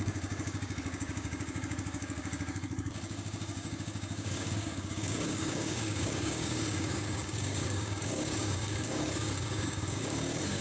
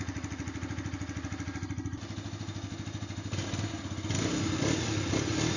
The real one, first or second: second